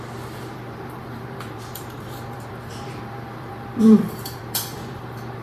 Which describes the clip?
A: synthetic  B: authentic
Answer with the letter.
A